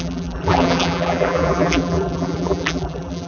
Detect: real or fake fake